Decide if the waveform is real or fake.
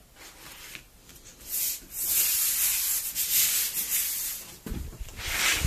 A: real